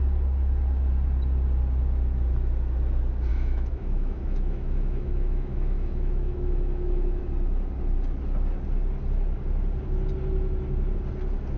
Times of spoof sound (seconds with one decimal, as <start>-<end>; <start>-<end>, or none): 3.3-7.2